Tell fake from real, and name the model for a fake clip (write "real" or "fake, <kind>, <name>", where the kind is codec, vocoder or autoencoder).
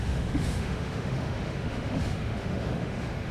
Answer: fake, autoencoder, DAC-VAE